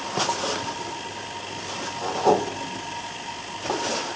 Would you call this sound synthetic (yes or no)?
no